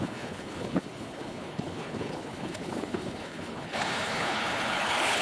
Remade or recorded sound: remade